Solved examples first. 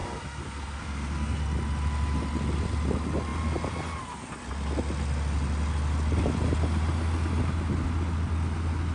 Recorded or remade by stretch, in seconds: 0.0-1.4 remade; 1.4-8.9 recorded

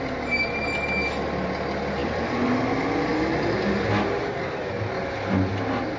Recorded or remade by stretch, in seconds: 0.0-2.0 recorded; 2.0-2.5 remade; 2.5-6.0 recorded

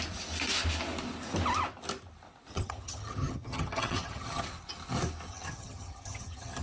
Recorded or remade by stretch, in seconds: 0.0-2.5 recorded; 2.5-4.4 remade; 4.4-5.3 recorded; 5.3-6.6 remade

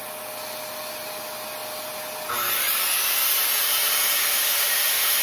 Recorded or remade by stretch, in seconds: 0.0-4.2 recorded; 4.2-5.2 remade

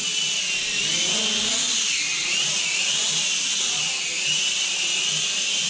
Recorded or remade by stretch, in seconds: 0.0-2.1 recorded; 2.1-3.2 remade; 3.2-3.8 recorded; 3.8-5.0 remade; 5.0-5.7 recorded

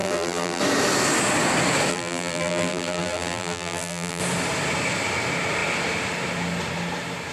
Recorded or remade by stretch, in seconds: 0.0-0.6 remade; 0.6-1.9 recorded; 1.9-4.2 remade; 4.2-7.3 recorded

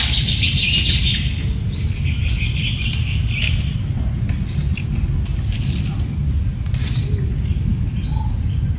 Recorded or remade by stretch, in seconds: 0.0-8.8 recorded